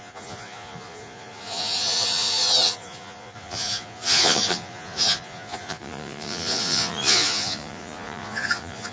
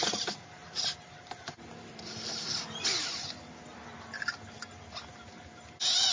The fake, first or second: first